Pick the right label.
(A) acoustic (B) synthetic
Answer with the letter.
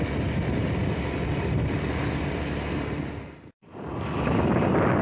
A